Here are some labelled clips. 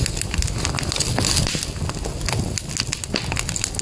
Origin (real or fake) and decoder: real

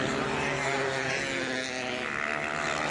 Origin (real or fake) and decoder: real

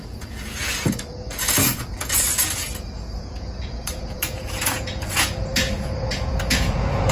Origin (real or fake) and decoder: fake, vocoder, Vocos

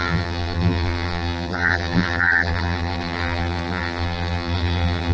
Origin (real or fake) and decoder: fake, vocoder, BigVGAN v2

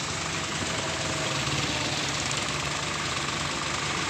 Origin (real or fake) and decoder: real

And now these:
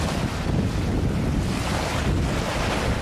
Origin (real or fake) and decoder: real